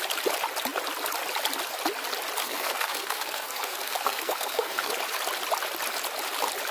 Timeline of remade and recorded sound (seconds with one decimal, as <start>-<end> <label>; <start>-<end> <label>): 0.0-2.4 recorded; 2.4-4.9 remade; 4.9-6.7 recorded